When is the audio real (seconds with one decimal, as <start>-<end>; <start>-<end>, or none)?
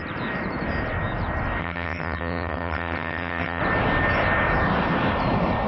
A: 0.0-1.6; 3.6-5.7